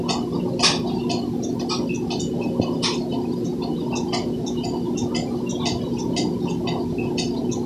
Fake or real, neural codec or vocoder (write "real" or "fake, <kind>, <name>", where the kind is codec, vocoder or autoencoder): real